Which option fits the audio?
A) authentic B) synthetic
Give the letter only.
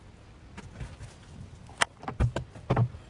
A